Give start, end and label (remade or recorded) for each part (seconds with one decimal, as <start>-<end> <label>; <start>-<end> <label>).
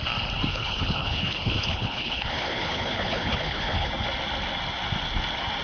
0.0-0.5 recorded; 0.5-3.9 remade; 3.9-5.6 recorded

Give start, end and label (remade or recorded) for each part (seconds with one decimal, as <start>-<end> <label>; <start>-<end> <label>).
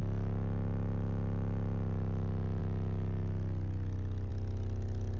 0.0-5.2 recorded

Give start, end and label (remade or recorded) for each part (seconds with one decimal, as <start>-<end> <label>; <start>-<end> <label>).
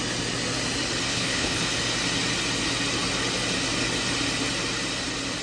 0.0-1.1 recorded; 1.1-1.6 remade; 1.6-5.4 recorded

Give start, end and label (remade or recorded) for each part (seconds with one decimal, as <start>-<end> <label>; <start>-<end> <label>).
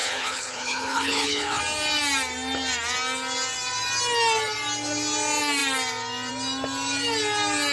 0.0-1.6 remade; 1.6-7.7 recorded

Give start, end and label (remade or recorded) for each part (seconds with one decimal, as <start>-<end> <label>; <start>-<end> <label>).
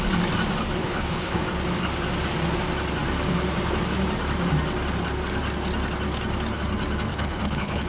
0.0-0.8 recorded; 0.8-1.4 remade; 1.4-7.1 recorded; 7.1-7.9 remade